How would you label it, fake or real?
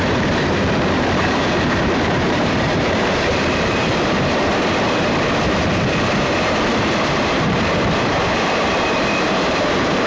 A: fake